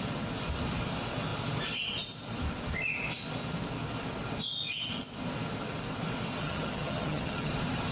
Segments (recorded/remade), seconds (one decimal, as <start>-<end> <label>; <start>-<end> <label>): 0.0-6.4 recorded; 6.4-7.5 remade; 7.5-7.9 recorded